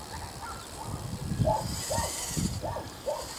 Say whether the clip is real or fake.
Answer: real